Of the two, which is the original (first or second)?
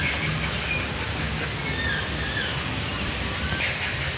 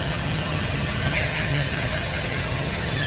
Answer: first